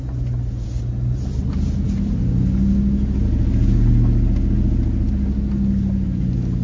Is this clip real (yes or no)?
yes